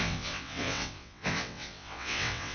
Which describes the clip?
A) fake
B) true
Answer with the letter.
A